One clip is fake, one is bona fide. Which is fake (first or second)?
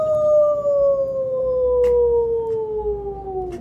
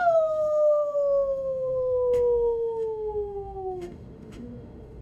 second